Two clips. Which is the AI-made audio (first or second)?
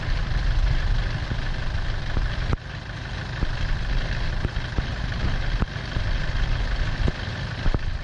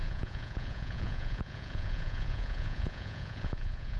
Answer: second